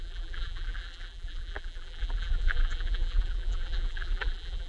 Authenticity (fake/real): fake